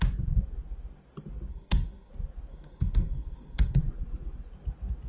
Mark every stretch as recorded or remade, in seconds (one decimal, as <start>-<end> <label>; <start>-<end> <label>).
0.0-1.5 recorded; 1.5-2.1 remade; 2.1-2.5 recorded; 2.5-3.8 remade; 3.8-5.1 recorded